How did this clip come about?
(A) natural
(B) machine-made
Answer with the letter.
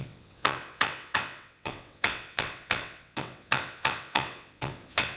B